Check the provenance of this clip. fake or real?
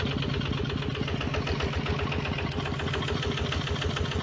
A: real